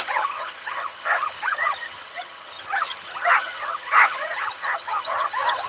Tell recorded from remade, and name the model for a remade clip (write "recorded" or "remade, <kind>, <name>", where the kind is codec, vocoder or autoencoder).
remade, vocoder, HiFi-GAN